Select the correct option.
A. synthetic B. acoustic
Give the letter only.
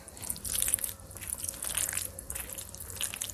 B